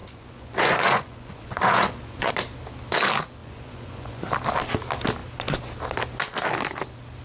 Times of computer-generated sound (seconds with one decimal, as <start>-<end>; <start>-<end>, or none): 0.0-2.3; 3.4-4.3